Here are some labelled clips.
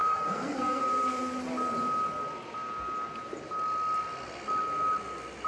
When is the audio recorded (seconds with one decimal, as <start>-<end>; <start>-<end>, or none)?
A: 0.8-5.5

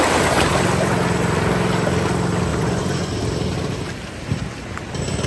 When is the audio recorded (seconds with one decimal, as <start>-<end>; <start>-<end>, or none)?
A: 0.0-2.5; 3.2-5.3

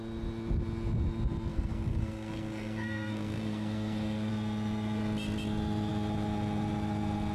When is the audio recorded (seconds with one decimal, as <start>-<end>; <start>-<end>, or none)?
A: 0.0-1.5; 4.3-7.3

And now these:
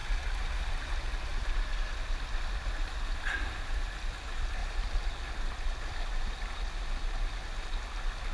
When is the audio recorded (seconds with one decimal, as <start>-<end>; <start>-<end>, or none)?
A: 0.0-1.3; 4.0-4.6; 6.1-8.3